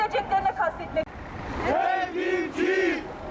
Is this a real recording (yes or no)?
yes